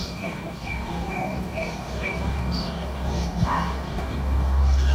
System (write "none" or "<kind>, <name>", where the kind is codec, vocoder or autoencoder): codec, DAC